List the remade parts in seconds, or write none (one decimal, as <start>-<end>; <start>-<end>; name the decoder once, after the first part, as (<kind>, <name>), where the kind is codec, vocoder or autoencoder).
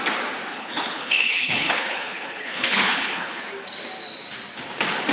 0.5-3.5 (codec, HILCodec)